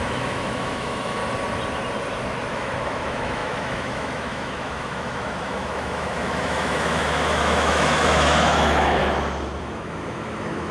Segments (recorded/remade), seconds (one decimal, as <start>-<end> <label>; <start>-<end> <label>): 0.0-1.2 remade; 1.2-2.5 recorded; 2.5-9.0 remade; 9.0-9.6 recorded; 9.6-10.7 remade